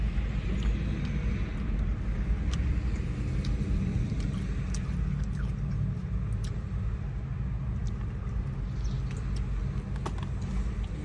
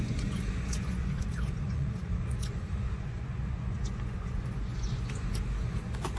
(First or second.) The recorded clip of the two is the first